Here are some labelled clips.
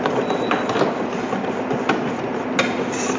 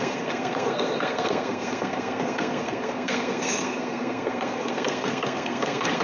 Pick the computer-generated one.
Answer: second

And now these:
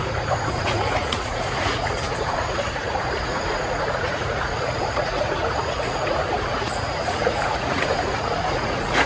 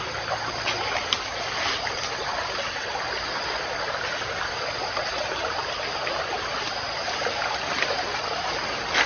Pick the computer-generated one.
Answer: first